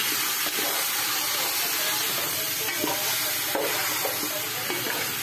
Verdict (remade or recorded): recorded